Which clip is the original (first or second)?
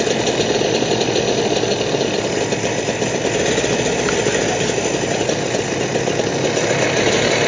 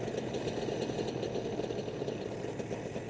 second